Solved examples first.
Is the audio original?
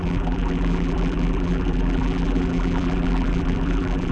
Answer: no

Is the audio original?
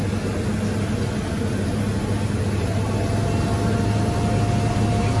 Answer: yes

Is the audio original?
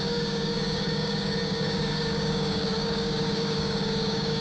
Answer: no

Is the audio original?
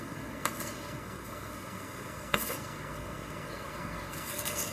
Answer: no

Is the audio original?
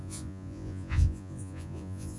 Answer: no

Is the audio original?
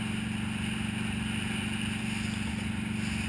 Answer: yes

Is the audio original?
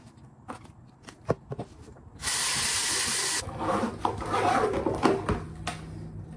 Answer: yes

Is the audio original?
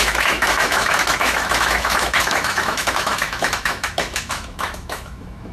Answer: no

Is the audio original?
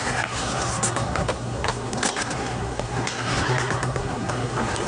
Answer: no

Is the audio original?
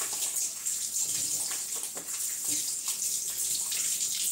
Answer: yes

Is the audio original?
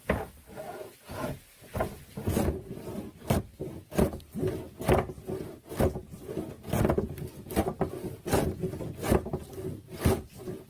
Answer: yes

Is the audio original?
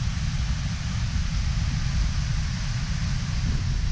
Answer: yes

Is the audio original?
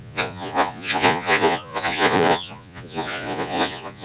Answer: no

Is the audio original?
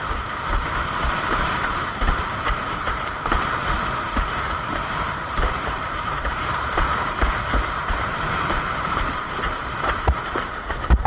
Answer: no